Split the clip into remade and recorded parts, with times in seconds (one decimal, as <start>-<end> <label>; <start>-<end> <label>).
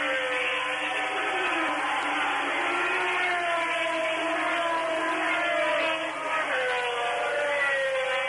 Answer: 0.0-8.3 recorded